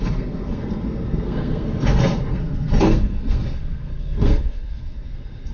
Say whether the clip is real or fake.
fake